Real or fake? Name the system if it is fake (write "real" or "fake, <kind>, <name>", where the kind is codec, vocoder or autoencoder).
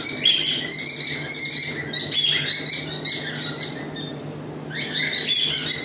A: real